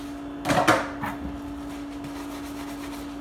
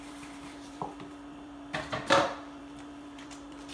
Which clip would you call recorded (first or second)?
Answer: first